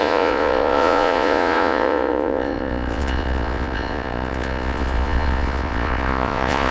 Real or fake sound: fake